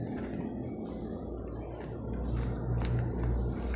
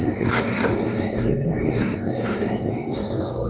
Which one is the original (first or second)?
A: first